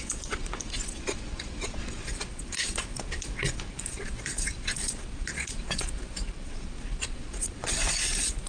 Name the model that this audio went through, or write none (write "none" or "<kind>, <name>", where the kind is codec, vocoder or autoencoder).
vocoder, Vocos